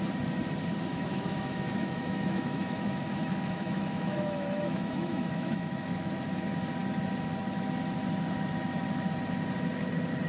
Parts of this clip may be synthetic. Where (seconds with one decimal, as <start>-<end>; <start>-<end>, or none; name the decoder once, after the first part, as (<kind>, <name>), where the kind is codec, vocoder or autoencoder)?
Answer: 0.9-6.1 (autoencoder, DAC-VAE)